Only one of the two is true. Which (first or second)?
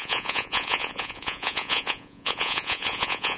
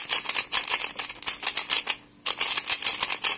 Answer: second